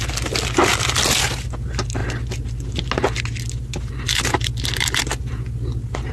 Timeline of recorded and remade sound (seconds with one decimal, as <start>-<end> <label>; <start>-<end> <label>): 0.0-6.1 recorded